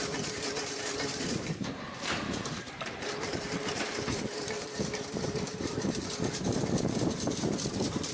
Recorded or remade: remade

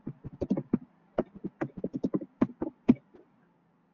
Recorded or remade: recorded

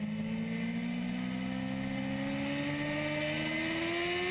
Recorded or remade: recorded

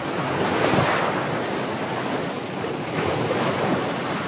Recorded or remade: recorded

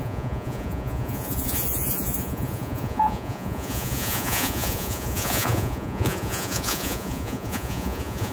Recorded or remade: remade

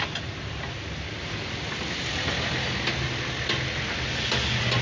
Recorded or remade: recorded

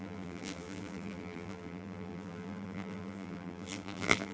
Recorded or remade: remade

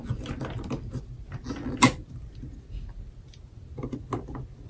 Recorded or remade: recorded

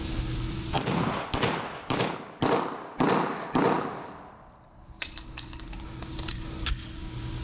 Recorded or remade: recorded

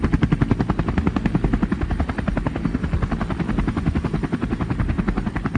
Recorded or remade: recorded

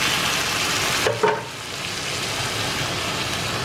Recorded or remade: recorded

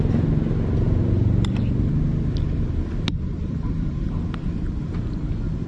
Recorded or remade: recorded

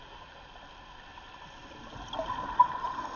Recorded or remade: recorded